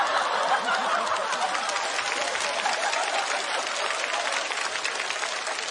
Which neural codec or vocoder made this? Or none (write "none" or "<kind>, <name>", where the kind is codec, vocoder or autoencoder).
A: none